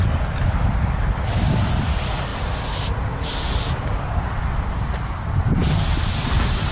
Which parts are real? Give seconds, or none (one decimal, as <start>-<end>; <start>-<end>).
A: 0.0-6.7

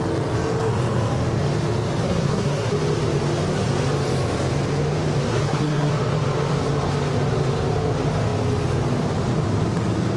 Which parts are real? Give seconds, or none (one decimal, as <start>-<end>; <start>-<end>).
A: 0.0-2.0; 2.7-5.3; 5.9-10.2

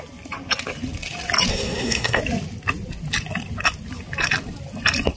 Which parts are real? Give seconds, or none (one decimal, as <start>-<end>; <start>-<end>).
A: 0.0-1.5; 2.2-5.2

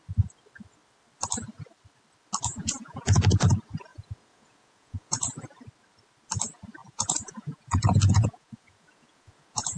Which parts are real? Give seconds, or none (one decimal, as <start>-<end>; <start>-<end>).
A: 0.0-2.5; 3.2-3.9; 5.4-6.8

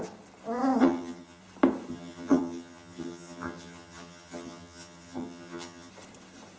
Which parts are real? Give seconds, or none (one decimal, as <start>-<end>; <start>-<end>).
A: 0.0-0.8; 1.4-1.9; 5.9-6.6

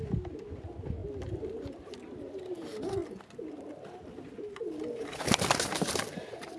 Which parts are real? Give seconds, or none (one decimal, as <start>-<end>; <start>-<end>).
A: 3.0-4.1